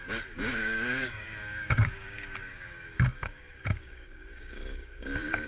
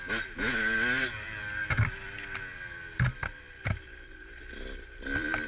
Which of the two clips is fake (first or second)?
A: first